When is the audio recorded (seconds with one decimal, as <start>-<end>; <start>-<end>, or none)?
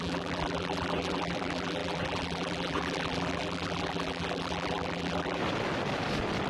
5.4-6.5